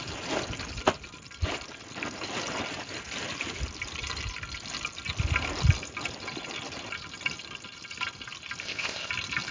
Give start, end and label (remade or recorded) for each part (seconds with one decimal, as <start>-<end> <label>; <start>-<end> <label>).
0.0-8.6 recorded; 8.6-9.1 remade; 9.1-9.5 recorded